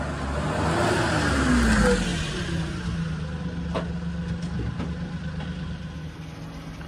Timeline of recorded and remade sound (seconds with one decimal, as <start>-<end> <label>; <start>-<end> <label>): 0.0-6.9 recorded